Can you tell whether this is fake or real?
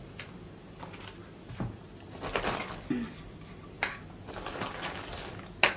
real